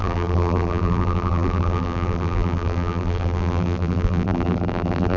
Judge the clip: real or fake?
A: fake